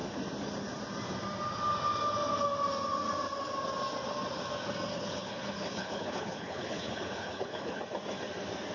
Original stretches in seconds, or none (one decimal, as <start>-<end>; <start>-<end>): 0.0-4.9; 7.8-8.7